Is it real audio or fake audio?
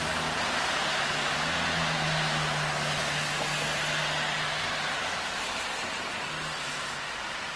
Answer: real